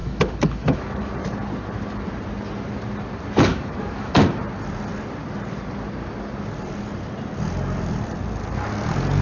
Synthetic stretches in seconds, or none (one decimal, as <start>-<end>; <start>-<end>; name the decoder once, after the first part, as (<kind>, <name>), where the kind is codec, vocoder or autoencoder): 0.0-1.1 (autoencoder, DAC-VAE); 3.5-4.4